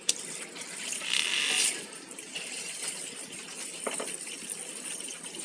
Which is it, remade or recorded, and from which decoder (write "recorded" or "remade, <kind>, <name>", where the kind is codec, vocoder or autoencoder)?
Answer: recorded